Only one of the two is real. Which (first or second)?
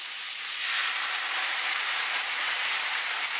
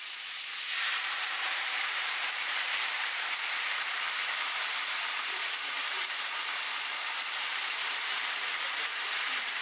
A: first